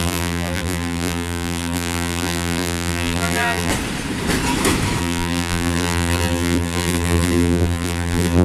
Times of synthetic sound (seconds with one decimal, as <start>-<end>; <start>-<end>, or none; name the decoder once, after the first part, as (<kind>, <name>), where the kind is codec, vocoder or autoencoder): 0.0-3.7 (vocoder, BigVGAN v2); 5.0-8.4